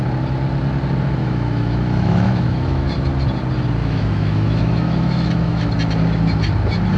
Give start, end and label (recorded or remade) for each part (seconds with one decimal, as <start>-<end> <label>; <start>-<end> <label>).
0.0-1.2 recorded; 1.2-2.9 remade; 2.9-3.8 recorded; 3.8-5.7 remade; 5.7-7.0 recorded